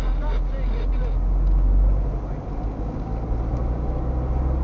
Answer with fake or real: real